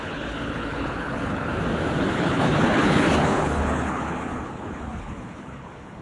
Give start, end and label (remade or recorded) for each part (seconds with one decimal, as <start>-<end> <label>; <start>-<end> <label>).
0.0-1.5 remade; 1.5-2.0 recorded; 2.0-6.0 remade